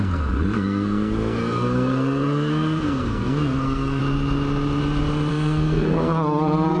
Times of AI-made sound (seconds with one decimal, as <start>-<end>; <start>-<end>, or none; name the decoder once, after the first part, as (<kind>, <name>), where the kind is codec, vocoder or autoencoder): 0.0-4.0 (codec, SNAC); 5.3-6.8